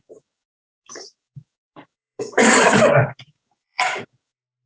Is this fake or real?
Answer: fake